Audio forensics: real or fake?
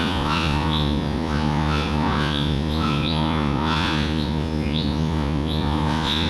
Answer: fake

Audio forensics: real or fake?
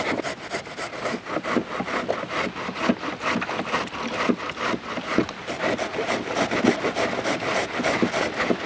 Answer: real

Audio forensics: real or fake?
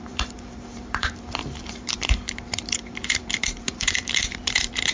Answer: fake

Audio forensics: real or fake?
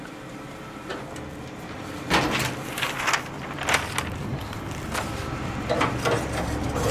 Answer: real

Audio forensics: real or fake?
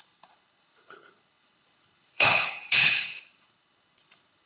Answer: fake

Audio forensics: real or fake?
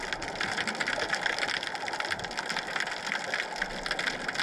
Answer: real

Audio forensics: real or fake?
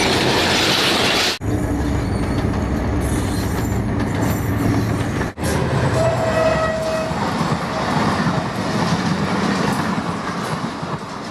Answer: real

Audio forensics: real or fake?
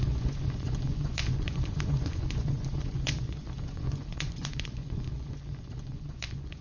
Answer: fake